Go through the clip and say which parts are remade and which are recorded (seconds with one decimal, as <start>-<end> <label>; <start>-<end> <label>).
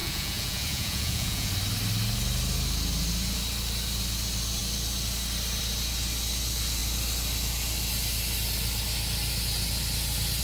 0.0-1.5 remade; 1.5-10.4 recorded